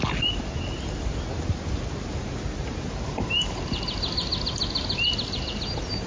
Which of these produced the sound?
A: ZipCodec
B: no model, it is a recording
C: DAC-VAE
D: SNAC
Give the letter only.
B